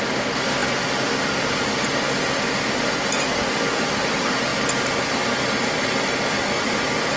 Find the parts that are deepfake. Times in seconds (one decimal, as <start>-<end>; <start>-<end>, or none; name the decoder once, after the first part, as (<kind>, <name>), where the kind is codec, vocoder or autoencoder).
none